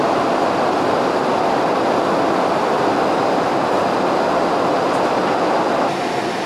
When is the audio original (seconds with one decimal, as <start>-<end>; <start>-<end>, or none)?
0.0-2.9; 3.7-6.5